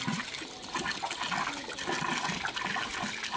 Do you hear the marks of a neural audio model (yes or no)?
no